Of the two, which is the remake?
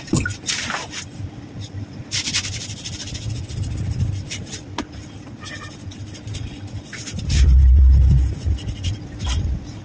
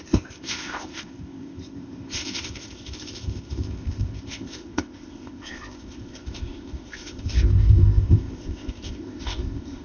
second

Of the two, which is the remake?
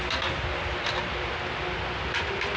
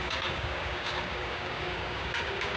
second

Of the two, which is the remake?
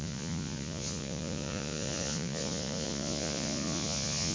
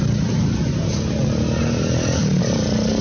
first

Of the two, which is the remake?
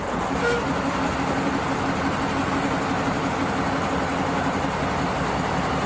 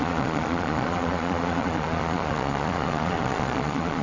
second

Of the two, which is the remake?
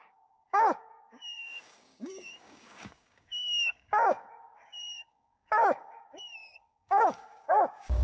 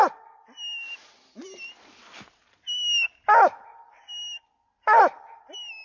first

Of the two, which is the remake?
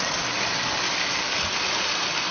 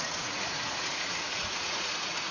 second